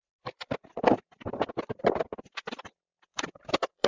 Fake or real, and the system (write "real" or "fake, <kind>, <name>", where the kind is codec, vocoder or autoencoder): real